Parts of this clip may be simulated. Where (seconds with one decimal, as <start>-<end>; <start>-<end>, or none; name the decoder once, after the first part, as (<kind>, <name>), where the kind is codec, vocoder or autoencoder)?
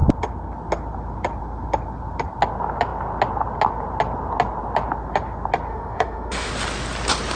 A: 5.7-6.5 (autoencoder, DAC-VAE)